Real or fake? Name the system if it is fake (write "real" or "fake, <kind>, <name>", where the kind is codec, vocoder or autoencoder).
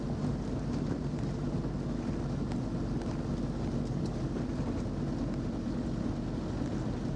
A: real